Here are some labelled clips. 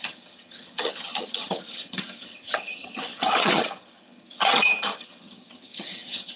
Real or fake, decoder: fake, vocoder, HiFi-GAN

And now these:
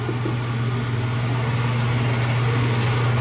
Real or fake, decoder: real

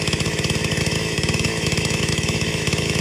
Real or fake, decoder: fake, autoencoder, DAC-VAE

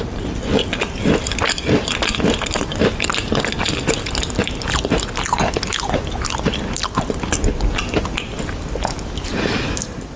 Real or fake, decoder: real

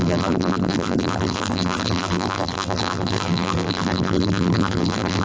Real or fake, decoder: fake, vocoder, BigVGAN v2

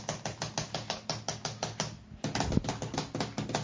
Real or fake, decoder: real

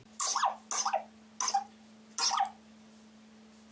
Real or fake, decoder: real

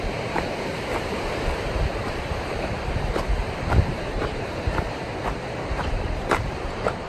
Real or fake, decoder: fake, vocoder, BigVGAN v2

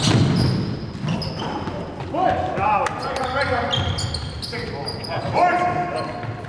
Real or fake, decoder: real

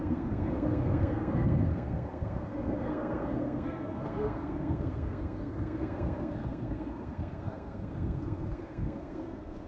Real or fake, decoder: fake, codec, SNAC